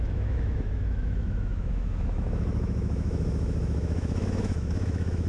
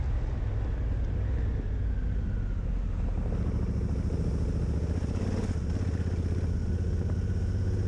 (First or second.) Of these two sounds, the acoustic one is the second